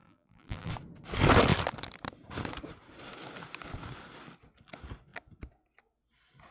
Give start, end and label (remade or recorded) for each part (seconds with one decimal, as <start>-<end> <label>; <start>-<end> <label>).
0.0-0.7 remade; 0.7-6.5 recorded